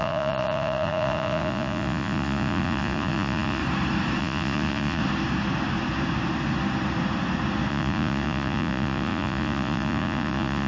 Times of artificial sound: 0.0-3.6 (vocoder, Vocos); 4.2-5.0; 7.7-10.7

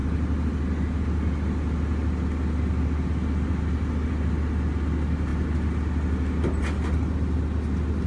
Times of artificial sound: none